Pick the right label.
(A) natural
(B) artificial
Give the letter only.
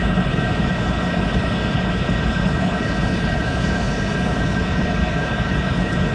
B